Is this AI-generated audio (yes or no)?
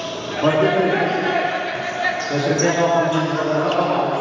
no